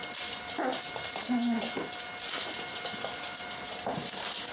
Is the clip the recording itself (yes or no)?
yes